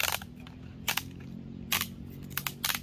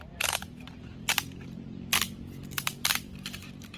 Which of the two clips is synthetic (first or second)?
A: second